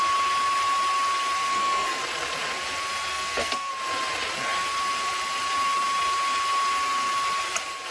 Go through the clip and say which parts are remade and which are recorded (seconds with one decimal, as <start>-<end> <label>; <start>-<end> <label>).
0.0-1.5 recorded; 1.5-2.0 remade; 2.0-3.1 recorded; 3.1-3.7 remade; 3.7-7.9 recorded